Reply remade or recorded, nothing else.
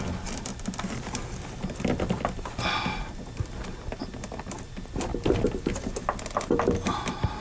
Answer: recorded